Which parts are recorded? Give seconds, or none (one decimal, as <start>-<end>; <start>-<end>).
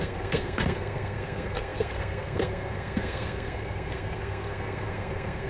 none